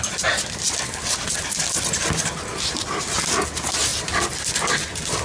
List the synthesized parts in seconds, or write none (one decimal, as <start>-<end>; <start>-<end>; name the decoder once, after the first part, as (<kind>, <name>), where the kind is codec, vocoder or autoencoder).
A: none